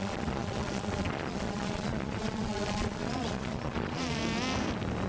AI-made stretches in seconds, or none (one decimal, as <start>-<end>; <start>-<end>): 0.0-4.2